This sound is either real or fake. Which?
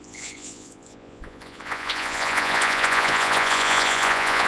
fake